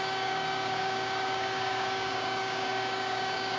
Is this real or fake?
fake